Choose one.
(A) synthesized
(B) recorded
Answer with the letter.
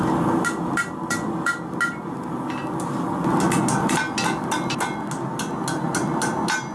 B